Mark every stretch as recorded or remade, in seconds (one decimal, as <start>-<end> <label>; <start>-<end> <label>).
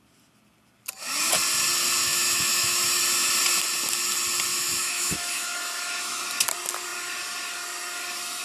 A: 0.0-2.0 recorded; 2.0-3.0 remade; 3.0-4.5 recorded; 4.5-6.2 remade; 6.2-8.4 recorded